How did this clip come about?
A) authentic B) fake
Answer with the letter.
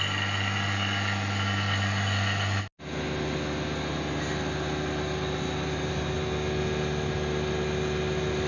A